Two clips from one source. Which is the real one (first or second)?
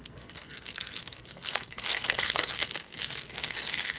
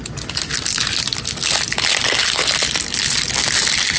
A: second